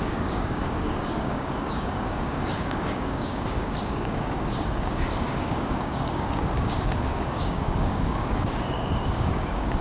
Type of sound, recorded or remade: remade